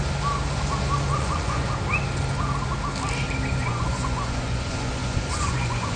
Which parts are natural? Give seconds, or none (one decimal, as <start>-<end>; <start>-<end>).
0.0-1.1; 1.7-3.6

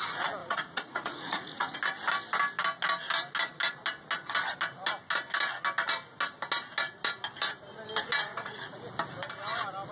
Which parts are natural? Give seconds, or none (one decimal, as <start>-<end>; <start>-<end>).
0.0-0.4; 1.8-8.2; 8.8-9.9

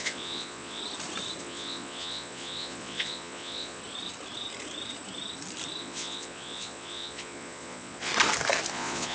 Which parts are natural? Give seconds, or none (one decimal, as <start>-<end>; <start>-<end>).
0.8-1.4; 3.8-5.8; 8.1-8.7

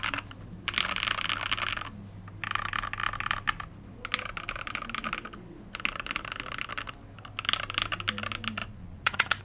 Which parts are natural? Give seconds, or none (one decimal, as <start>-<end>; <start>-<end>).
0.0-8.6